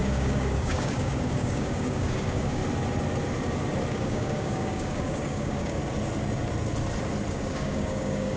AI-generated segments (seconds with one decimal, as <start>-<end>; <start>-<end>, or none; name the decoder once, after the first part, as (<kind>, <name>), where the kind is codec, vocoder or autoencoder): 0.0-2.6 (codec, DAC); 3.9-5.8; 7.3-8.4